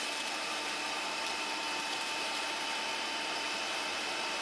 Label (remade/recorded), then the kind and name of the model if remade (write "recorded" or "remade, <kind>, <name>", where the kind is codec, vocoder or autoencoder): remade, vocoder, BigVGAN v2